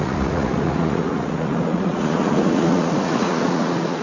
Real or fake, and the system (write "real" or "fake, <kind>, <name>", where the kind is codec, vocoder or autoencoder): fake, vocoder, Vocos